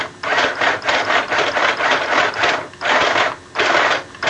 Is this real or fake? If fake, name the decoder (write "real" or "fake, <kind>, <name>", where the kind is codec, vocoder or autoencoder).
real